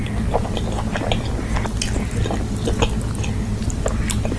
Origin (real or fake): real